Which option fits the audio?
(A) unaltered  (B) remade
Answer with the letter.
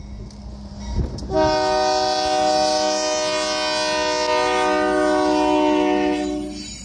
A